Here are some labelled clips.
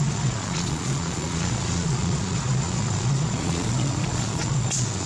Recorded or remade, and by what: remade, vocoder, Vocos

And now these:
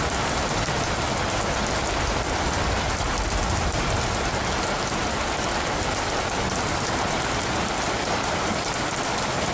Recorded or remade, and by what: recorded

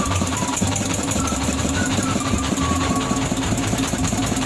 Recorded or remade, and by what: remade, vocoder, BigVGAN v2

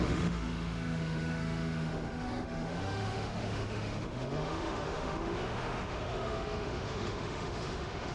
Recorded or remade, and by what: remade, autoencoder, DAC-VAE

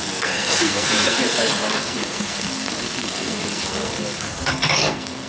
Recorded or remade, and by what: remade, codec, SNAC